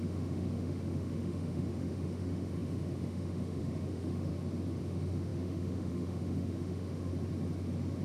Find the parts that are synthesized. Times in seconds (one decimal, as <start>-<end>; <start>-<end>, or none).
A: 0.0-4.3; 4.8-7.1